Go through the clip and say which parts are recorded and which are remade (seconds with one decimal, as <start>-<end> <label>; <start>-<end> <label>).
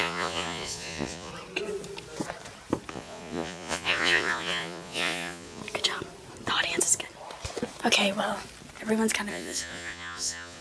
0.0-1.3 remade; 1.3-2.9 recorded; 2.9-5.6 remade; 5.6-9.3 recorded; 9.3-10.6 remade